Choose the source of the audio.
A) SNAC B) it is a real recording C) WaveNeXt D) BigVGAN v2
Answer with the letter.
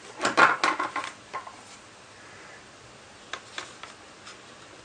B